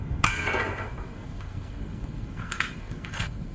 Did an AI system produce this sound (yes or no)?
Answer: yes